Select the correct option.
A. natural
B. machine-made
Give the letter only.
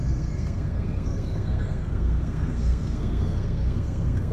B